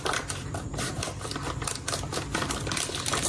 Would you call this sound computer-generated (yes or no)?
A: yes